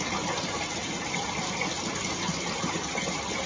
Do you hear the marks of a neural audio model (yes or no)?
no